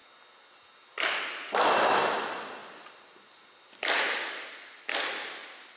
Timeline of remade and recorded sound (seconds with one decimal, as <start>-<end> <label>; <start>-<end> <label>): 0.0-5.8 recorded